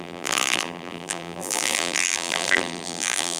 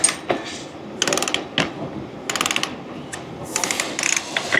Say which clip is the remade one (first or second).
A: first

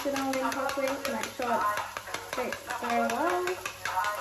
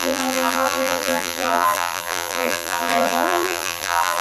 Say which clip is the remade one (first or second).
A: second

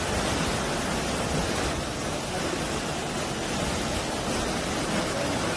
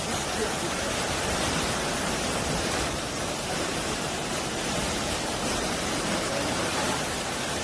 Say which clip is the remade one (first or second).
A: second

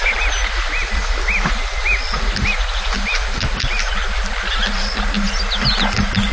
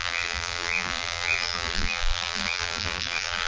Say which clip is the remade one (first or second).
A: second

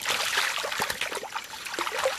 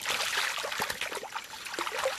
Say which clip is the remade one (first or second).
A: first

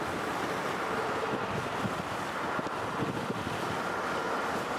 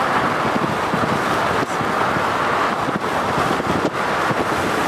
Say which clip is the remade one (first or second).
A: first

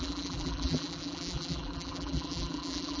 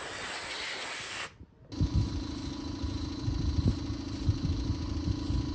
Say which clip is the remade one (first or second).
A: first